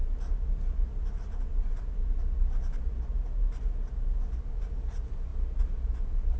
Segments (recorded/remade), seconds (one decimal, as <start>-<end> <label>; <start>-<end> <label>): 0.0-6.4 recorded